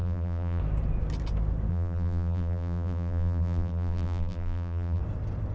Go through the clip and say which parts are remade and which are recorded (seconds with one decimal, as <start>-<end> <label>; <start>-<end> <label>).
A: 0.0-0.6 remade; 0.6-1.7 recorded; 1.7-5.0 remade; 5.0-5.5 recorded